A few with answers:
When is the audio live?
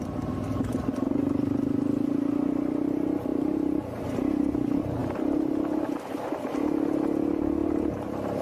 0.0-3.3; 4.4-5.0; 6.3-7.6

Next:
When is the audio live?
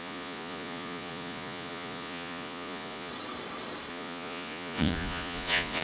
3.1-3.9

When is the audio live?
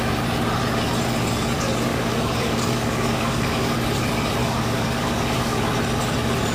0.0-1.9; 3.7-4.4; 5.7-6.5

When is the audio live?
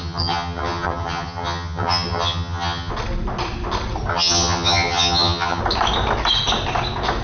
2.9-4.1; 5.6-7.2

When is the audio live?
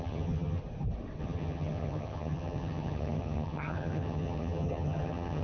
0.6-1.2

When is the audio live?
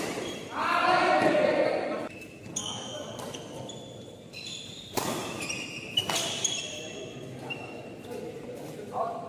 0.0-2.6; 3.1-9.3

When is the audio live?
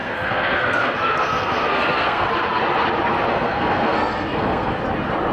2.3-3.3; 4.8-5.3